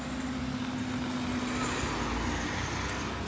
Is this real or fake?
real